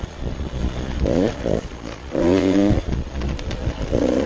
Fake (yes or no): yes